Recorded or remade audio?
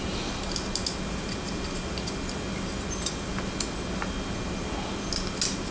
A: recorded